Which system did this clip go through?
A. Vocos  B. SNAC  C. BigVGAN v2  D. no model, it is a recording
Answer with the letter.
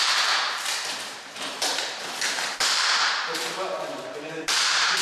C